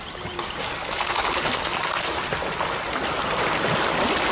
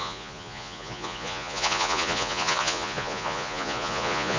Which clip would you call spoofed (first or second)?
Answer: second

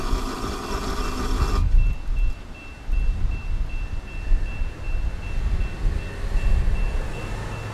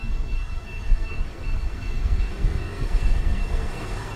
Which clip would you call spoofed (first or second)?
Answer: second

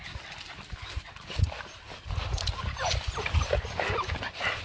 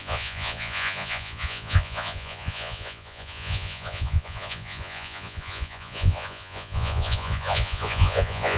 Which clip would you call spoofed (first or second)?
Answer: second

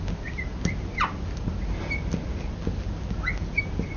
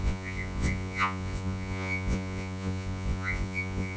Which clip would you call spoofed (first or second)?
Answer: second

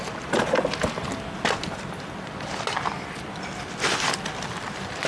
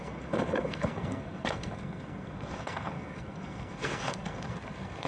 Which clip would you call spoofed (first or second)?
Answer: second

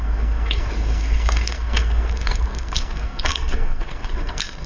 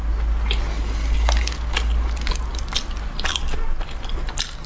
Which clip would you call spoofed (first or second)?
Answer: first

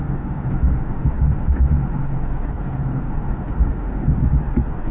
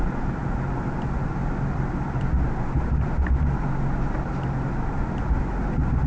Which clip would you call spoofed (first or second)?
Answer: first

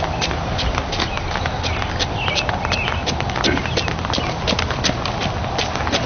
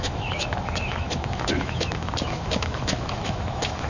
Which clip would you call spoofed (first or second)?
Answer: second